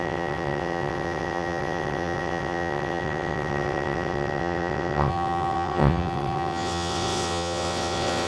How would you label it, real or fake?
fake